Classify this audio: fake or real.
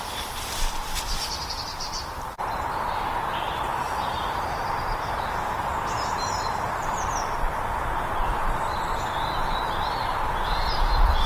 fake